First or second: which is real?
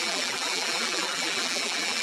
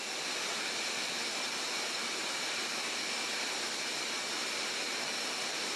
second